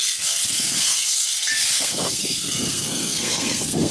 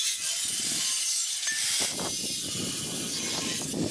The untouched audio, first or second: second